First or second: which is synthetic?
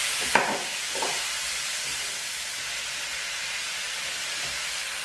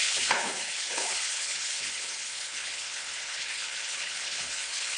second